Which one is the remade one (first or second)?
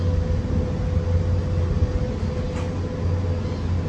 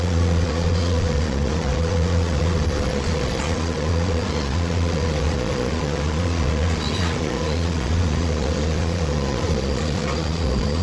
second